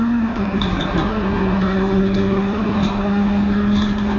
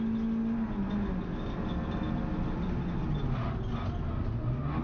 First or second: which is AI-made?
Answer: first